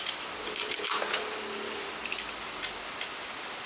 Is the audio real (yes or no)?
yes